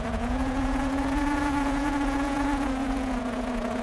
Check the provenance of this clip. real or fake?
fake